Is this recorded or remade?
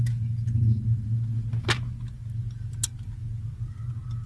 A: recorded